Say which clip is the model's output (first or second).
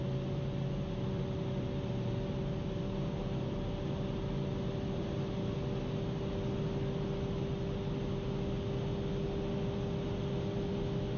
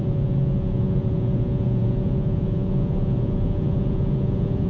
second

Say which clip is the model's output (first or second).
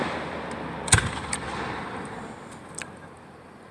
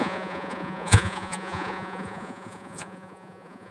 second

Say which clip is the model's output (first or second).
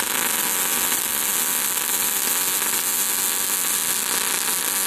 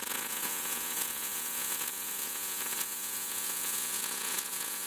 second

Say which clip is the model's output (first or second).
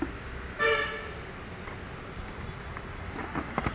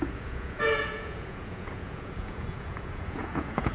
second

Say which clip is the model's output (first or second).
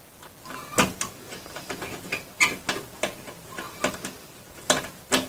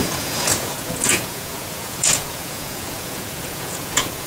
second